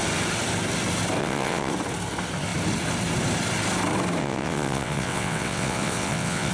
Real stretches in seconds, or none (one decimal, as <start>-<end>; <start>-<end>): 0.0-1.2; 1.7-4.2